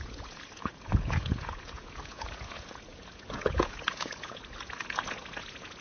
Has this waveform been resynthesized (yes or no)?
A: yes